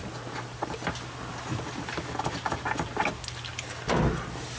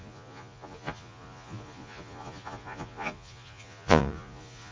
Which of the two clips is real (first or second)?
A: first